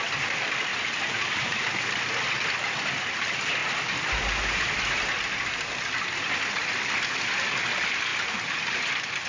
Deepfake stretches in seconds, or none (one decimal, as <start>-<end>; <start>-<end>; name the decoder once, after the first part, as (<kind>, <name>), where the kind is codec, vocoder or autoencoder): 0.7-1.6 (vocoder, BigVGAN v2); 8.1-8.8